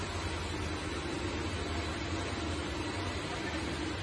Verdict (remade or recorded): recorded